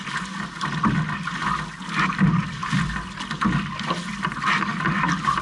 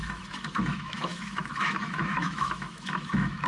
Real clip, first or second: first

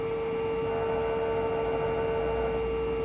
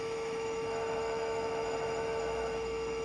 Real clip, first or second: first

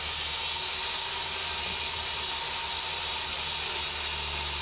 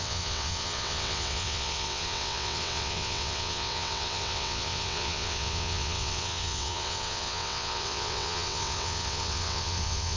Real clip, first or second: first